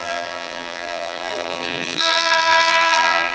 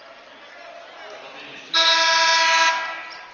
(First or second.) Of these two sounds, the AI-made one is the first